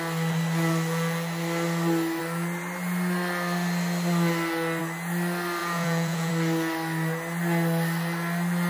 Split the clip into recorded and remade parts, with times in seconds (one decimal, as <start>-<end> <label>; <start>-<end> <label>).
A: 0.0-5.6 recorded; 5.6-6.3 remade; 6.3-8.7 recorded